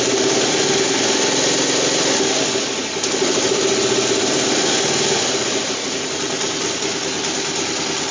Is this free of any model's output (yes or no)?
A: yes